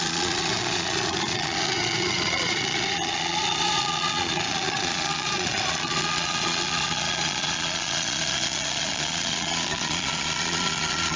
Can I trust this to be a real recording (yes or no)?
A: no